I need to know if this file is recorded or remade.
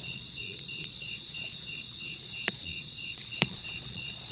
remade